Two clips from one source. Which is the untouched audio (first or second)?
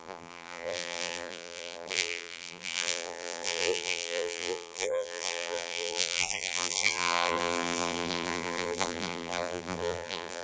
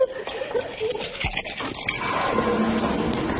second